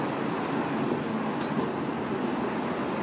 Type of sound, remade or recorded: recorded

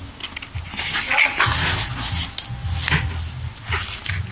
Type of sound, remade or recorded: recorded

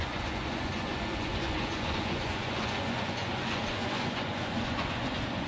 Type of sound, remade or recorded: remade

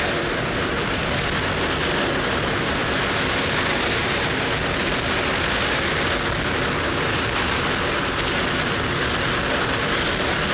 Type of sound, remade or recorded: recorded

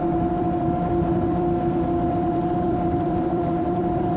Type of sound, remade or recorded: remade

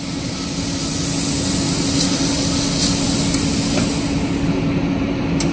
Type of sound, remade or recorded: recorded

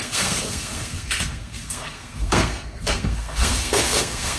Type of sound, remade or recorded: remade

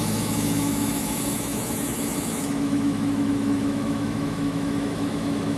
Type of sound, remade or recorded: remade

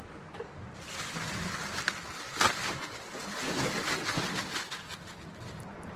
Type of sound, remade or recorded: recorded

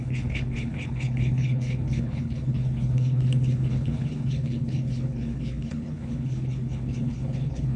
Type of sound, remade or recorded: remade